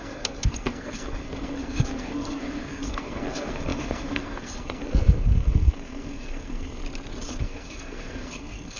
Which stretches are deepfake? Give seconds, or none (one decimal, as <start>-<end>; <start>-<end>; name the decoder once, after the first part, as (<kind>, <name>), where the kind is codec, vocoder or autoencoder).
0.0-6.8 (codec, SNAC); 7.4-8.8